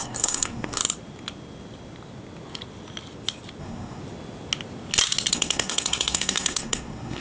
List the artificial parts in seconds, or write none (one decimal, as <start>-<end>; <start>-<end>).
0.0-0.8; 3.6-4.0; 5.3-7.2